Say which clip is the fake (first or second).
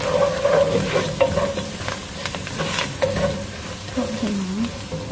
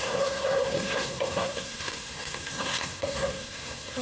second